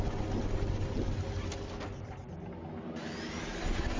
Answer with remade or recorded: recorded